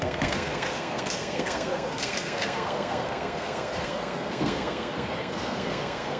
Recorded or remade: remade